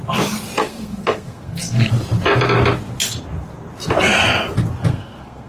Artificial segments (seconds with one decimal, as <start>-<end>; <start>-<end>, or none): 0.6-1.9; 4.9-5.5